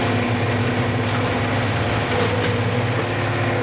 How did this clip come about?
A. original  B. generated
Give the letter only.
A